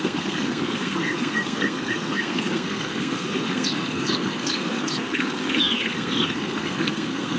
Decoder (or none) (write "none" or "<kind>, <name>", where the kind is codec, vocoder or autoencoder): codec, SNAC